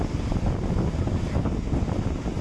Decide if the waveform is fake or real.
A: real